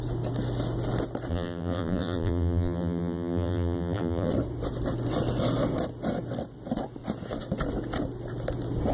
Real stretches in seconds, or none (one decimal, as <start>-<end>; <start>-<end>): 0.0-1.3; 4.3-8.9